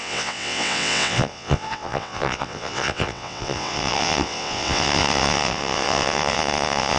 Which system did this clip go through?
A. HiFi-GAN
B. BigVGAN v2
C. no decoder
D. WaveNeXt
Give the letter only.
D